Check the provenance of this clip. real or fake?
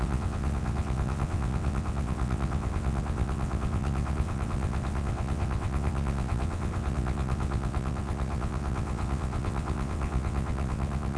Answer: fake